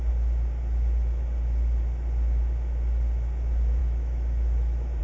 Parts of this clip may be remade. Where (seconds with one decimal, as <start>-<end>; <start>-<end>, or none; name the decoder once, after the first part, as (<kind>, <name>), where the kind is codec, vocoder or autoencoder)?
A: 3.8-5.0 (autoencoder, DAC-VAE)